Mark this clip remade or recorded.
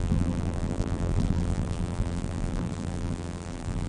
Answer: remade